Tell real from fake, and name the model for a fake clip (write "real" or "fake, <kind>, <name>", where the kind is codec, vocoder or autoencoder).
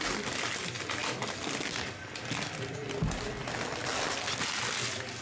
real